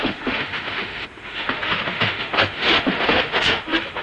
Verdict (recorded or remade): remade